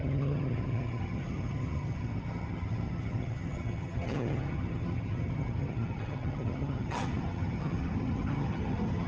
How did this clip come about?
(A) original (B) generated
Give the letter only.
B